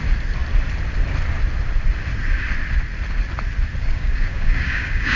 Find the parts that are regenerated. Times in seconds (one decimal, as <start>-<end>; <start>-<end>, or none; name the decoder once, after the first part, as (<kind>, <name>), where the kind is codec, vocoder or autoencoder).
3.8-5.2 (codec, DAC)